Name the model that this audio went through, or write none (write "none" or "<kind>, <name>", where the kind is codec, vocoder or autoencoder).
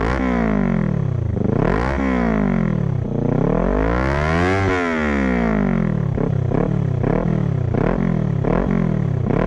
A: none